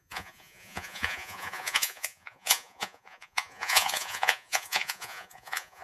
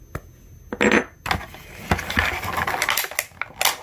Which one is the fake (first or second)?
first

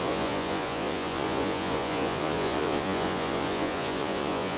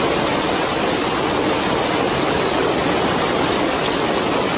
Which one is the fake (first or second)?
first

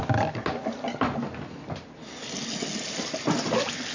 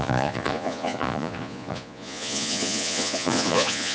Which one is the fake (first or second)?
second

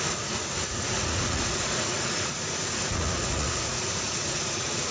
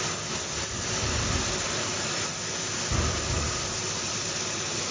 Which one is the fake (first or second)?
first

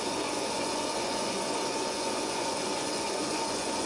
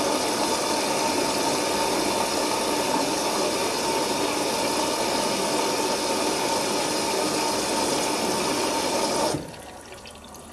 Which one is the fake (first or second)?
first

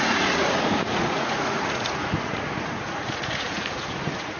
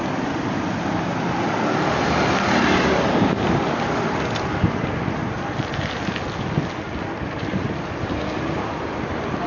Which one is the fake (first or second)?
first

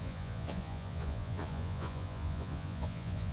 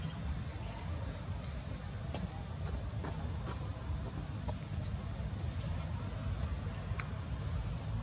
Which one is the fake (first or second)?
first